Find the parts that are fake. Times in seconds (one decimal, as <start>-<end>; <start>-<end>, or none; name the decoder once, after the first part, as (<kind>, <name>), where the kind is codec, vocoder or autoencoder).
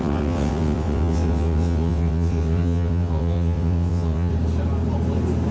0.0-4.3 (vocoder, WaveNeXt)